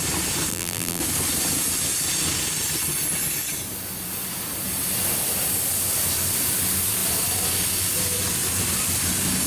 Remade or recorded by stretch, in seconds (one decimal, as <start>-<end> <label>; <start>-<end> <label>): 0.0-0.5 recorded; 0.5-1.0 remade; 1.0-9.5 recorded